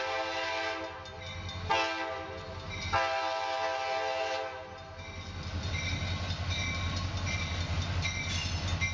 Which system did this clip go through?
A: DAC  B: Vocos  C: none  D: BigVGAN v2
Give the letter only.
C